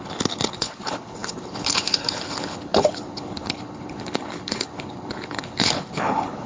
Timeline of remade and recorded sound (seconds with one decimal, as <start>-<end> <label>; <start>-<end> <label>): 0.0-6.5 remade